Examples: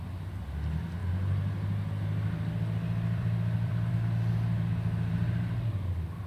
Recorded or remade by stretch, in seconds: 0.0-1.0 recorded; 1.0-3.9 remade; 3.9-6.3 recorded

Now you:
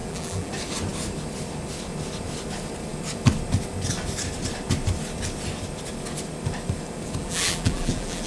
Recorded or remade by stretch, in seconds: 0.0-0.5 remade; 0.5-7.2 recorded; 7.2-8.3 remade

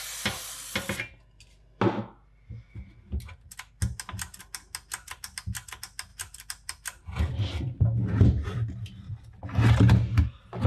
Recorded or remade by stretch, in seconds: 0.0-6.1 recorded; 6.1-9.4 remade; 9.4-10.7 recorded

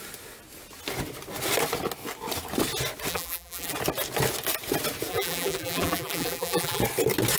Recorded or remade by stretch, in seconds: 0.0-3.1 recorded; 3.1-3.7 remade; 3.7-5.1 recorded; 5.1-6.8 remade; 6.8-7.4 recorded

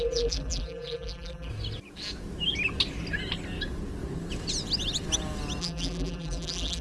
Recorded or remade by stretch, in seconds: 0.0-1.5 remade; 1.5-5.6 recorded; 5.6-6.8 remade

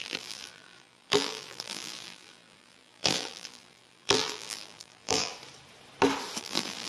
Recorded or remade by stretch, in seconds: 0.0-5.3 remade; 5.3-6.4 recorded; 6.4-6.9 remade